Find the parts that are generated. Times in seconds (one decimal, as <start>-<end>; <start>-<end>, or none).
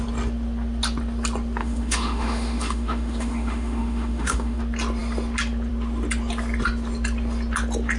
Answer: 1.6-4.6